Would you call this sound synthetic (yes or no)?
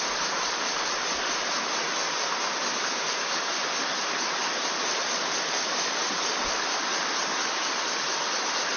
no